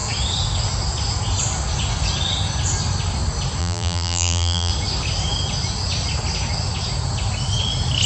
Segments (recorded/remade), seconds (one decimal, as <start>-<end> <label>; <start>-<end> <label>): 0.0-3.6 recorded; 3.6-4.7 remade; 4.7-8.1 recorded